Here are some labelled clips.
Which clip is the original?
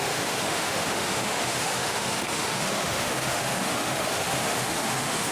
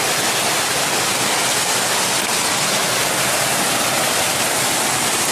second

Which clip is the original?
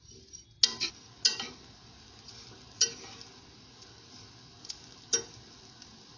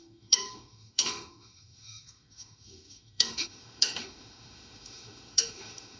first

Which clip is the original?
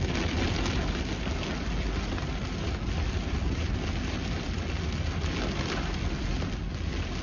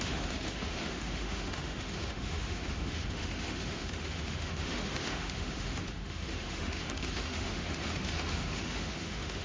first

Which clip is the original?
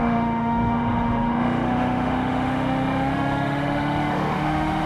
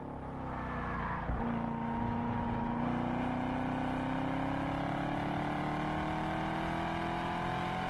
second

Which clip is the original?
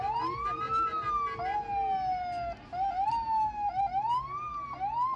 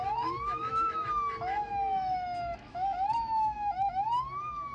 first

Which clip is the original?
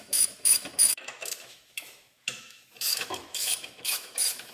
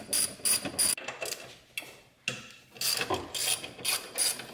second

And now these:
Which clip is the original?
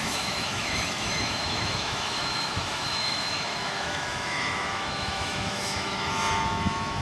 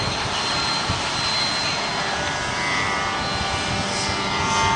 second